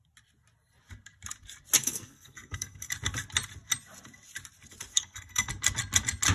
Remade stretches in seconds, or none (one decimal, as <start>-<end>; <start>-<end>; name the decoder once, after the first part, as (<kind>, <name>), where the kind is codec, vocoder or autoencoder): 1.8-2.9 (codec, SNAC); 4.9-5.5